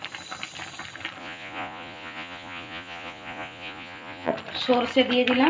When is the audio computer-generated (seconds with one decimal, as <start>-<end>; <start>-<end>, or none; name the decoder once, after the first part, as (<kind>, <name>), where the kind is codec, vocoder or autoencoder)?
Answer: 1.2-4.3 (vocoder, Vocos)

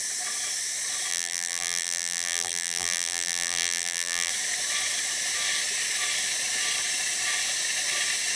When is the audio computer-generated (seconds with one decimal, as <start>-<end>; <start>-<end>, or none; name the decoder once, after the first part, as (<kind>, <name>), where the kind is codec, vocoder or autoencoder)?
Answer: 1.1-4.3 (vocoder, BigVGAN v2)

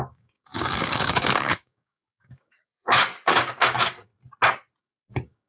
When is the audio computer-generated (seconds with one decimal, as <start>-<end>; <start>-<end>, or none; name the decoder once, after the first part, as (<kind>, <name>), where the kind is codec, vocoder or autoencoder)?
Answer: 0.0-4.1 (codec, DAC); 4.8-5.5

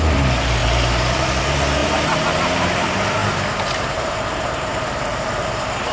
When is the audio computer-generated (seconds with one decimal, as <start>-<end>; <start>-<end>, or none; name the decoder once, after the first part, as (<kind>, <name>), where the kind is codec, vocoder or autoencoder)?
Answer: 0.0-5.9 (vocoder, BigVGAN v2)